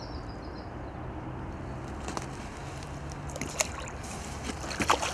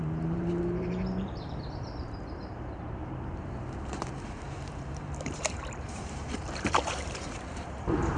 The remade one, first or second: second